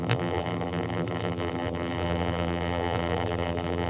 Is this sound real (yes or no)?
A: no